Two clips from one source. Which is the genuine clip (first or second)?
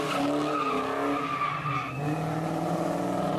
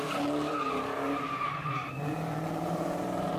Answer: first